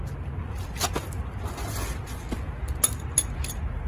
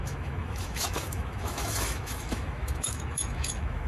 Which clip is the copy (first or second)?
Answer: second